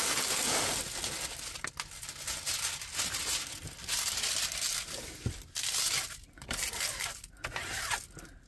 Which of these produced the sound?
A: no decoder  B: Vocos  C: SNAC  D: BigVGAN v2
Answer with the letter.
A